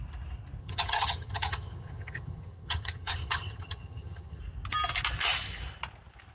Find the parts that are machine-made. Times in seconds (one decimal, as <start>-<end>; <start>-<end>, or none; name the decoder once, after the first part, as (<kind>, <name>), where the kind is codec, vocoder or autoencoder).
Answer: 0.6-4.4 (vocoder, HiFi-GAN)

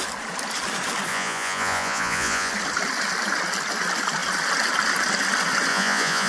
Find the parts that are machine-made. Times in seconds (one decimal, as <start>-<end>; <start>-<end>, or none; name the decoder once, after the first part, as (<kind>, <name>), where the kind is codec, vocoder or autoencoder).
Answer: 1.1-2.5 (vocoder, Vocos); 5.7-6.3

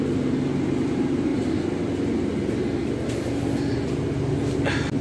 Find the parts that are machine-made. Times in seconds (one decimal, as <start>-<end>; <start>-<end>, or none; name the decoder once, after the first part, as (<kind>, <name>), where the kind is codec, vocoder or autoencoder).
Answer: none

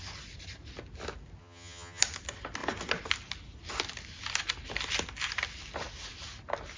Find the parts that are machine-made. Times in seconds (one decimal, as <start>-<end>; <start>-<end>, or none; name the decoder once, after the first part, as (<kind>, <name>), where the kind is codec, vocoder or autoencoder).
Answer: 1.4-2.0 (vocoder, HiFi-GAN)